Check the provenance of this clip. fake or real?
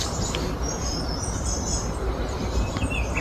real